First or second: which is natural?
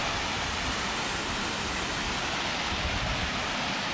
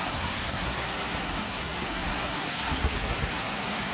first